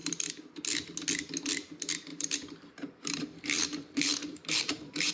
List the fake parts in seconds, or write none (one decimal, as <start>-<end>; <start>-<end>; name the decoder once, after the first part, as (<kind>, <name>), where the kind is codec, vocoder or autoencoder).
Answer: 2.1-5.1 (vocoder, BigVGAN v2)